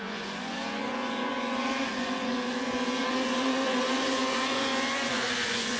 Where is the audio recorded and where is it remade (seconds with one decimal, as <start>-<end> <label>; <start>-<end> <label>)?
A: 0.0-5.8 remade